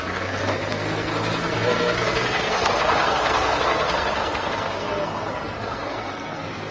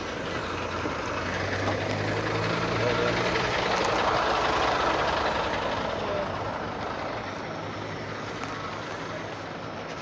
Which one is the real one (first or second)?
second